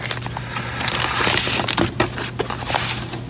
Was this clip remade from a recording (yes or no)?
no